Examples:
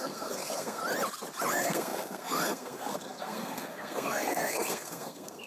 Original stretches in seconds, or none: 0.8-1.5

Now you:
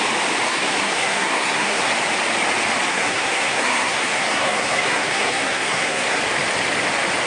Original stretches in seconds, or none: 0.0-0.5; 1.9-2.9; 6.2-7.3

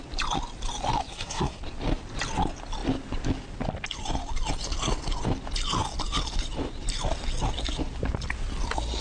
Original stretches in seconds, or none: 0.0-1.1; 1.6-9.0

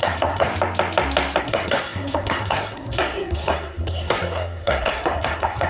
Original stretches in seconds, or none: 0.5-1.4

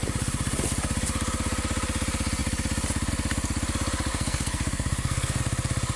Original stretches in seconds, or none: 0.0-4.1; 5.4-6.0

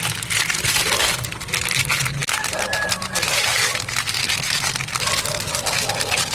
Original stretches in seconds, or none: 0.0-6.3

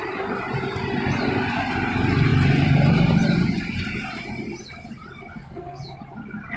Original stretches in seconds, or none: 0.0-5.3; 5.8-6.6